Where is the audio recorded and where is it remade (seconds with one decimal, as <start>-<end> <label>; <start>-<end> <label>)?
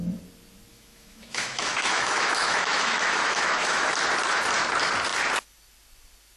0.0-0.7 recorded; 0.7-3.9 remade; 3.9-6.4 recorded